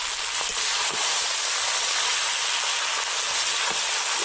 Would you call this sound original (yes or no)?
yes